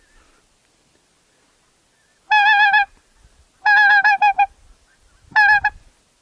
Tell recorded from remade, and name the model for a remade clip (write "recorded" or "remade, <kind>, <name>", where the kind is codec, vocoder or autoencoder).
recorded